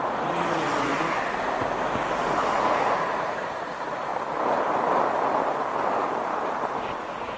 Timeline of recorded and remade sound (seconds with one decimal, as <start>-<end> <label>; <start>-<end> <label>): 0.0-0.9 remade; 0.9-2.6 recorded; 2.6-4.1 remade; 4.1-6.7 recorded; 6.7-7.4 remade